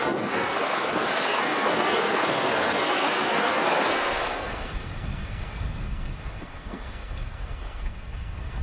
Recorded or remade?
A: remade